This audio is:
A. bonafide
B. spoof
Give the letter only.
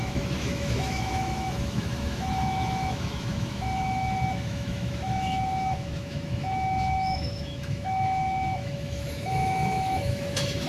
B